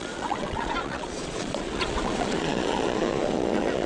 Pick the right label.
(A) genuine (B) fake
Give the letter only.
B